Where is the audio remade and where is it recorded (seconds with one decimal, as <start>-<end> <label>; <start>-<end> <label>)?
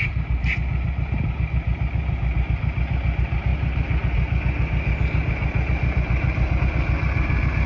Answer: 0.0-7.7 recorded